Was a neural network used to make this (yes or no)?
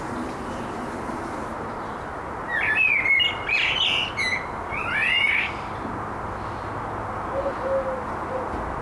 no